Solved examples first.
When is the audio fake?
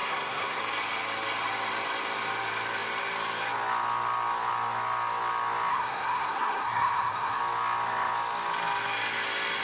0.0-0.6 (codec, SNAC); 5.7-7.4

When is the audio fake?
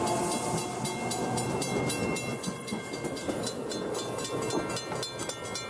2.3-2.8 (vocoder, Vocos)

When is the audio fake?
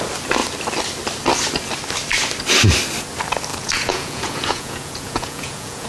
3.5-5.9 (vocoder, Vocos)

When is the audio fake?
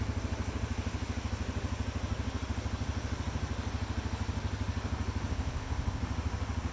5.3-6.0 (codec, ZipCodec)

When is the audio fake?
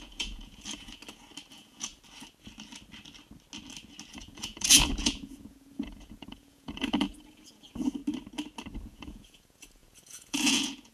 0.0-1.0 (vocoder, Vocos); 1.5-1.9; 4.1-8.0; 8.7-10.9